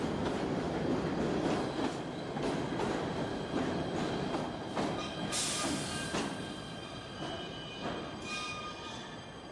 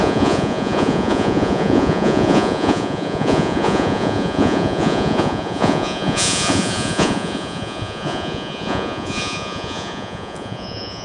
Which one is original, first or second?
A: first